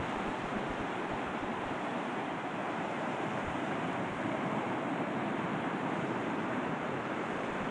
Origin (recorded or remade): remade